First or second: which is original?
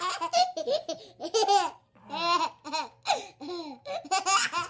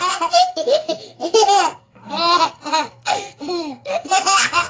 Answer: first